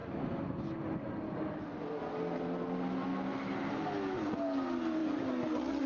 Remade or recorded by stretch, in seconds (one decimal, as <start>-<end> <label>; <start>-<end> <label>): 0.0-5.9 recorded